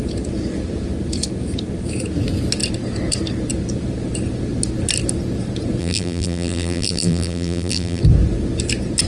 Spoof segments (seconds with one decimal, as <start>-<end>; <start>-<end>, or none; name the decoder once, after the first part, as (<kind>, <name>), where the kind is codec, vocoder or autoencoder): 5.8-8.0 (vocoder, BigVGAN v2)